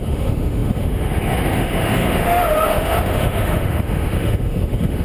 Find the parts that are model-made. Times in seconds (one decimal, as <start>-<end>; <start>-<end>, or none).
0.0-5.0